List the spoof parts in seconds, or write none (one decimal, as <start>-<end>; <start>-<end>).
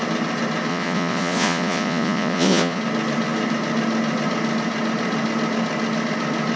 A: 0.7-2.8